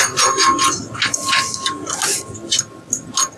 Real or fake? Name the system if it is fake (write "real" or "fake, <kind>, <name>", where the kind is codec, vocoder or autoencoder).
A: real